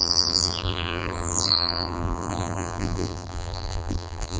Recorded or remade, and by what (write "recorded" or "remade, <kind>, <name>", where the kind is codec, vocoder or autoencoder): remade, vocoder, BigVGAN v2